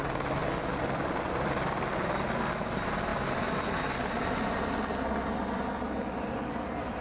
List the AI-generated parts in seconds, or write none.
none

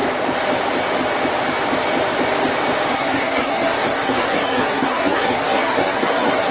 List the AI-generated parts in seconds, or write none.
2.9-6.5

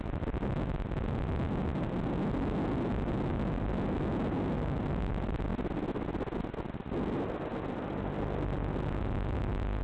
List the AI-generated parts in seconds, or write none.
none

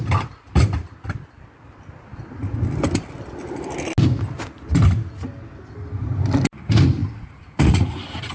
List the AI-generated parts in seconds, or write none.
7.0-7.9